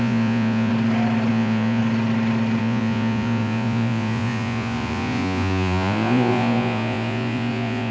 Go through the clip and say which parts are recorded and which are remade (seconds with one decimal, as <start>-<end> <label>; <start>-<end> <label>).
0.0-0.7 remade; 0.7-1.3 recorded; 1.3-1.8 remade; 1.8-2.6 recorded; 2.6-7.9 remade